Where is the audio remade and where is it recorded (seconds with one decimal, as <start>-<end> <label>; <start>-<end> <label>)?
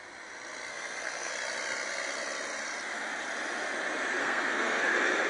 0.0-0.7 recorded; 0.7-1.3 remade; 1.3-4.2 recorded; 4.2-4.8 remade; 4.8-5.3 recorded